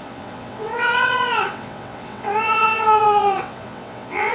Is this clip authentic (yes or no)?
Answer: no